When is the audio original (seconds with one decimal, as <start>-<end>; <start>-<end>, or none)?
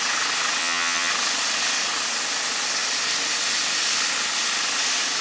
0.0-0.6; 1.1-5.2